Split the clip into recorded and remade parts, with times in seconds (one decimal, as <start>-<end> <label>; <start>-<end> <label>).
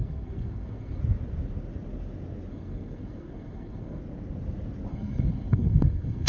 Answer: 0.0-1.0 remade; 1.0-2.5 recorded; 2.5-4.0 remade; 4.0-4.9 recorded; 4.9-6.3 remade